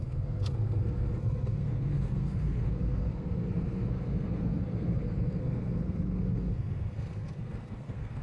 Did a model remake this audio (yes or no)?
yes